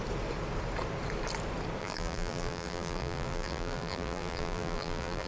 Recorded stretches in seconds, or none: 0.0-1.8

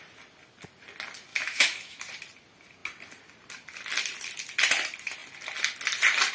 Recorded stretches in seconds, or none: 0.0-1.3; 2.0-6.3

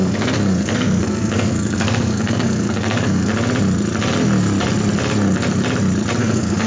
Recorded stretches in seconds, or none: 3.3-6.2

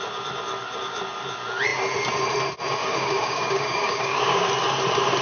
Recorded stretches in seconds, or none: 0.0-2.8; 4.5-5.2

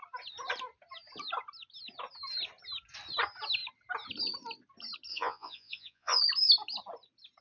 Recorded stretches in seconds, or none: 0.0-5.1; 6.2-7.4

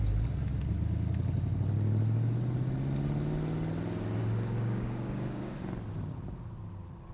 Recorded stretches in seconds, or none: 0.0-4.2; 5.5-7.1